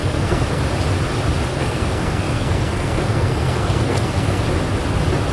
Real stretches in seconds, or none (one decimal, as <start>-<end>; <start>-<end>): 0.6-1.5; 4.4-5.3